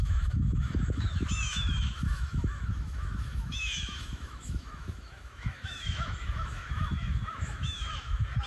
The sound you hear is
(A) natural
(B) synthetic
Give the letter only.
B